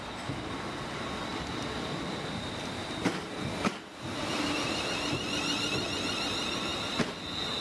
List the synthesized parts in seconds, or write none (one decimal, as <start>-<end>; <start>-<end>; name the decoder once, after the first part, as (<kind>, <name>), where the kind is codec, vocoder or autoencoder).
none